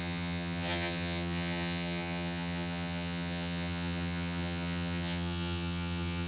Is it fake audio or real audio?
fake